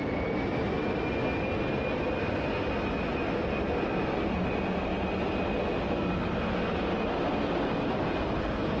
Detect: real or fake real